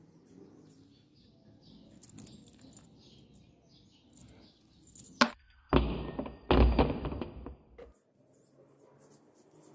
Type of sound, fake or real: real